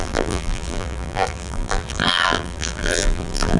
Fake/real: fake